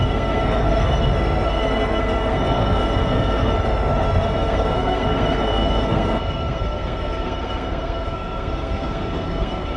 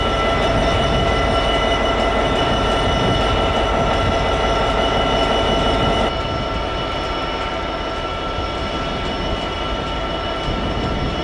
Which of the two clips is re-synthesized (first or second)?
first